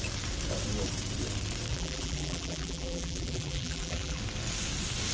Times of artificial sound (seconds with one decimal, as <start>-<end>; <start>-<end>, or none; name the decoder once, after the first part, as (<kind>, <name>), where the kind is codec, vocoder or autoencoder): 1.7-4.2 (vocoder, BigVGAN v2)